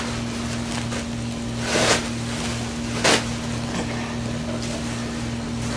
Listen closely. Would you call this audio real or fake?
real